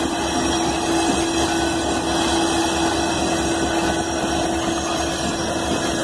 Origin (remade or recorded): recorded